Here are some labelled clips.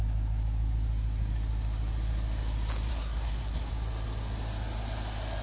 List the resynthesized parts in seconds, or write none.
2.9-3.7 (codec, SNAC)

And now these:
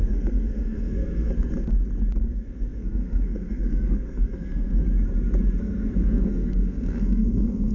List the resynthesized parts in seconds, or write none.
0.0-1.3 (codec, SNAC); 2.3-4.8; 5.6-7.7

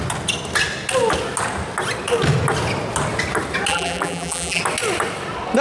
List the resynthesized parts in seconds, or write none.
3.7-4.6 (vocoder, BigVGAN v2)

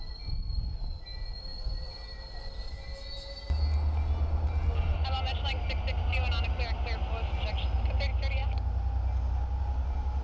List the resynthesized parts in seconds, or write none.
none

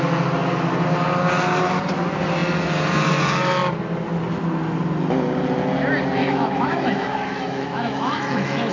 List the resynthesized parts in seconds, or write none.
6.2-8.7 (autoencoder, DAC-VAE)

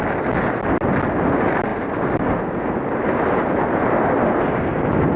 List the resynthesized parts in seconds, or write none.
none

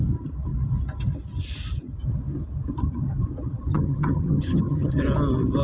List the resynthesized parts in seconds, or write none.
3.7-4.9 (vocoder, HiFi-GAN)

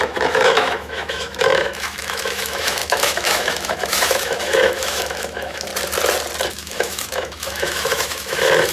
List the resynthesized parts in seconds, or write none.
0.0-5.7 (autoencoder, DAC-VAE); 6.5-8.7